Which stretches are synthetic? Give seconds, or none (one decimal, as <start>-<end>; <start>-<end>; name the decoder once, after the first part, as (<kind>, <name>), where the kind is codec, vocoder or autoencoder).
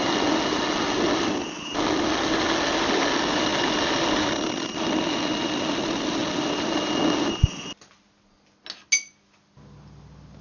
none